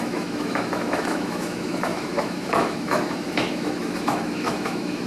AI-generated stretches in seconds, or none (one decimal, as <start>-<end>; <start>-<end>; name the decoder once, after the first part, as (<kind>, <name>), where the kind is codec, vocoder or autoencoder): 0.0-5.1 (autoencoder, DAC-VAE)